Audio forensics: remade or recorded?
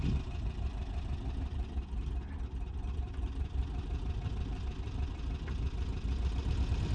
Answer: recorded